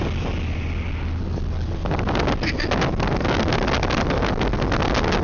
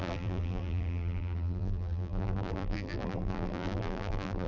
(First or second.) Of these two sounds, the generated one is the second